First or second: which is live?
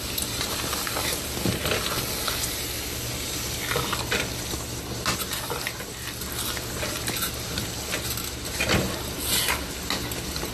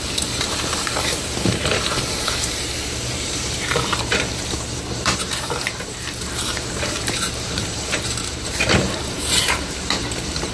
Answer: first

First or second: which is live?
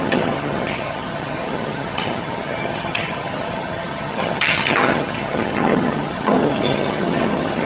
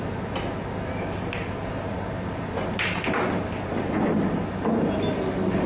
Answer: second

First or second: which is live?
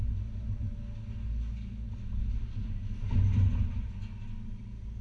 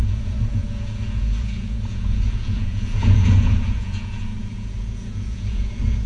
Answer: first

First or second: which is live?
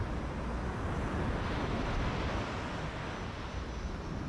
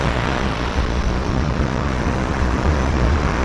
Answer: first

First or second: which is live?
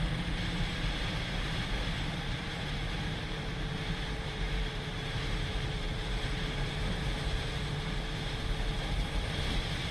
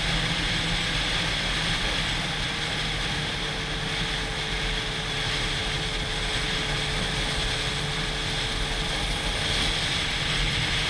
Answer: second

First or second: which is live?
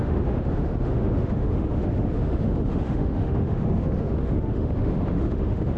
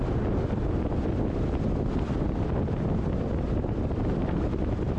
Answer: second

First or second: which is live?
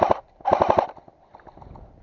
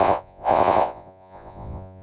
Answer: first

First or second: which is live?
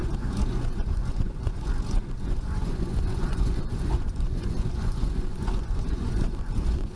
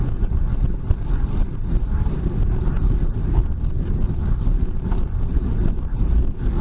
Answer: second